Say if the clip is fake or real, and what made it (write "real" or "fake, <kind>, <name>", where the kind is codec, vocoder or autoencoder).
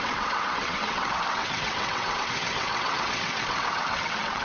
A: fake, vocoder, WaveNeXt